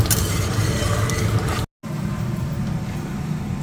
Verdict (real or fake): real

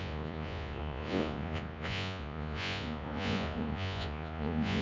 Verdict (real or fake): fake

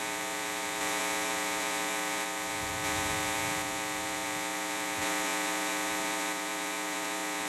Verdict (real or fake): fake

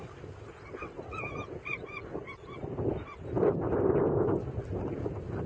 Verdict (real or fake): real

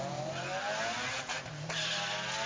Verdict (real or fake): real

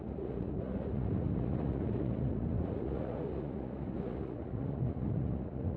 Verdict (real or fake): fake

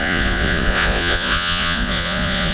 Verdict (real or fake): fake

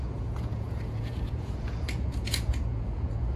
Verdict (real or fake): fake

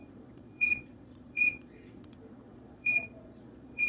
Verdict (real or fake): fake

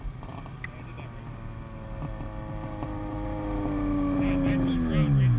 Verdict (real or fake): real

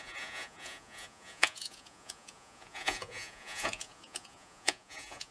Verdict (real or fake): fake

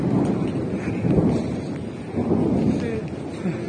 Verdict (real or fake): real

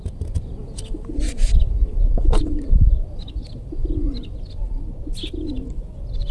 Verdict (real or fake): real